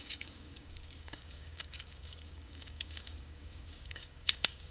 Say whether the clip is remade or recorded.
remade